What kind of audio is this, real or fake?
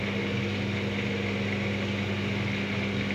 real